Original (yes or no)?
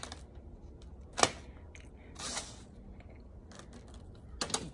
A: yes